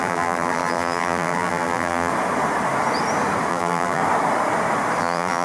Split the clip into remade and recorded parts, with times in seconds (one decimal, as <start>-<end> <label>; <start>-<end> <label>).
0.0-2.1 remade; 2.1-3.5 recorded; 3.5-4.0 remade; 4.0-5.0 recorded; 5.0-5.4 remade